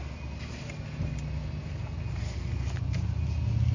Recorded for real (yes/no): yes